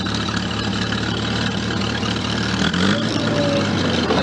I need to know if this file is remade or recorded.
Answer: recorded